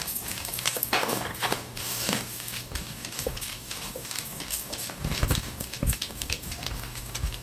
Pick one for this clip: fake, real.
fake